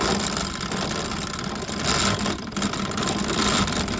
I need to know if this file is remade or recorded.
recorded